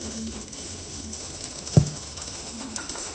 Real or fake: fake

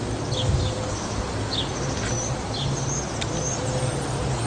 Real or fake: real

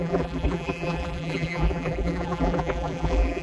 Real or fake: fake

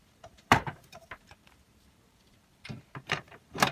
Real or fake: fake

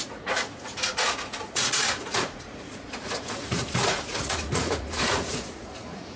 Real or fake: fake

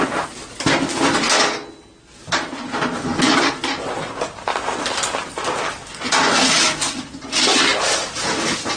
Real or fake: real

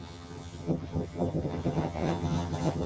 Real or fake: fake